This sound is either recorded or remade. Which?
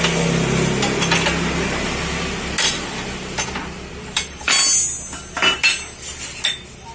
recorded